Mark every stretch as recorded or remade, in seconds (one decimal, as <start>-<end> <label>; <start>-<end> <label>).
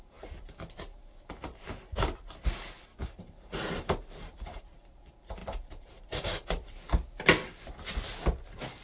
0.0-2.9 recorded; 2.9-4.6 remade; 4.6-5.4 recorded; 5.4-6.9 remade; 6.9-8.8 recorded